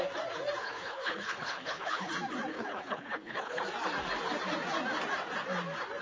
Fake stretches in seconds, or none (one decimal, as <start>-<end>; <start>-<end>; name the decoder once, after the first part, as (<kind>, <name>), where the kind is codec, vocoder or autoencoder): 0.6-2.1 (codec, HILCodec); 2.5-3.6